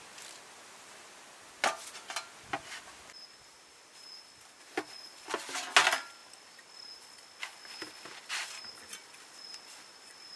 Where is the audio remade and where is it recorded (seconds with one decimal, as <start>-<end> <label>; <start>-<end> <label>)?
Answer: 0.0-10.4 recorded